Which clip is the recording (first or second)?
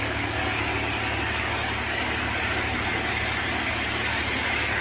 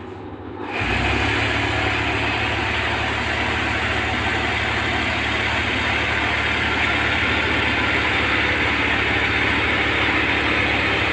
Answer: second